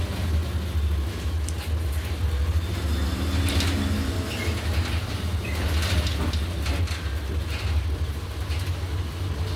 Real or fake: real